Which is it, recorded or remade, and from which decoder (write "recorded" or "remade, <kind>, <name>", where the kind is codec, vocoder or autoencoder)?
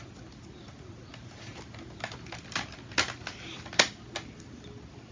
recorded